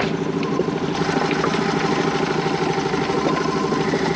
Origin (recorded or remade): recorded